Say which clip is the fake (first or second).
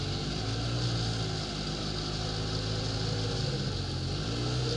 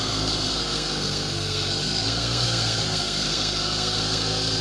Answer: second